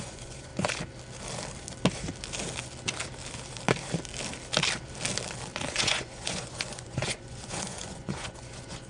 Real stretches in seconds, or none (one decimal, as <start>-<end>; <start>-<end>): 0.5-5.7